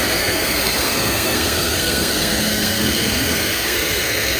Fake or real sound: fake